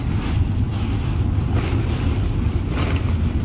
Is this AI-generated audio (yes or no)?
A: no